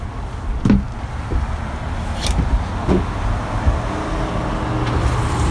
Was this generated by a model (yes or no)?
no